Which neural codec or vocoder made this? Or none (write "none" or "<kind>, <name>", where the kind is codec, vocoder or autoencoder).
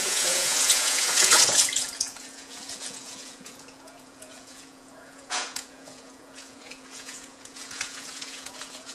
vocoder, Vocos